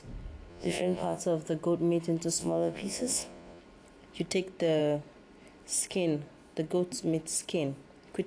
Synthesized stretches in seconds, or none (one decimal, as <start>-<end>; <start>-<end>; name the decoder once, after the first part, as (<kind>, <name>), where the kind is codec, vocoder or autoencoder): 0.5-1.2 (vocoder, Vocos); 2.4-3.6